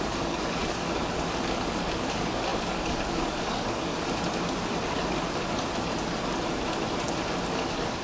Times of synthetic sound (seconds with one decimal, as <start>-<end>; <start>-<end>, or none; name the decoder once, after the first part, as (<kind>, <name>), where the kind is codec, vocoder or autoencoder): 0.0-3.9 (codec, DAC); 7.5-8.0